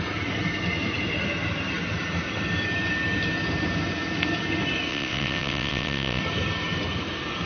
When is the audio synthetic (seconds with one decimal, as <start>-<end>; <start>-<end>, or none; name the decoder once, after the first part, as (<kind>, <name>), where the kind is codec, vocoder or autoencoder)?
4.9-6.2 (vocoder, WaveNeXt)